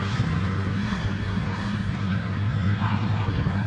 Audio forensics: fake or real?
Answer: fake